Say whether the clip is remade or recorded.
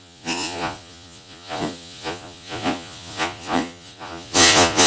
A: remade